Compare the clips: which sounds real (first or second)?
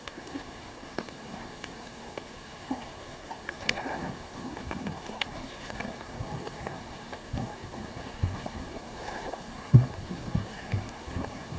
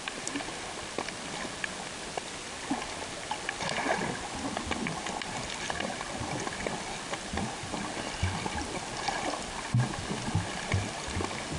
second